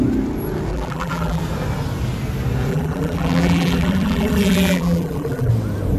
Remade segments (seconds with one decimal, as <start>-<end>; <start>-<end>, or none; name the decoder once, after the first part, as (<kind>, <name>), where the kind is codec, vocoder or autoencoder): 0.7-1.4 (vocoder, BigVGAN v2); 2.7-5.5